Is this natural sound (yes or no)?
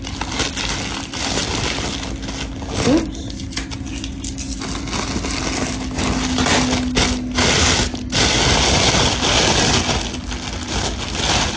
yes